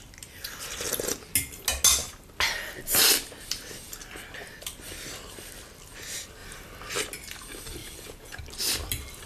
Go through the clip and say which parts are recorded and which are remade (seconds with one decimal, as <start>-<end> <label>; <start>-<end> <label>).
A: 0.0-7.8 recorded; 7.8-8.4 remade; 8.4-9.3 recorded